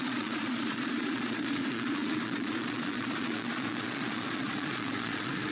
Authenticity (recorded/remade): remade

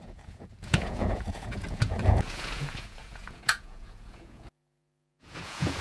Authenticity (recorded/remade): remade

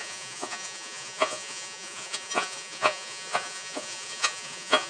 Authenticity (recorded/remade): remade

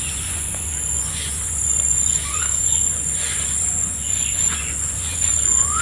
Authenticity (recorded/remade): remade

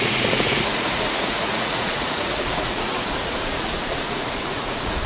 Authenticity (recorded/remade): remade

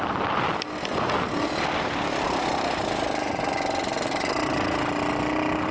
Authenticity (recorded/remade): recorded